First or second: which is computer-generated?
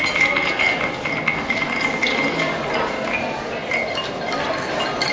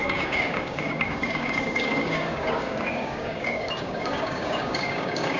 second